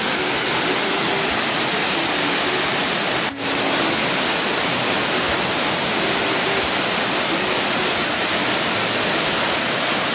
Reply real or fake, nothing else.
real